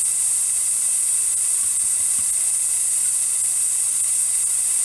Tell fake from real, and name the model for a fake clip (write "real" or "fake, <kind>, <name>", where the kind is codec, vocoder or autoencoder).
real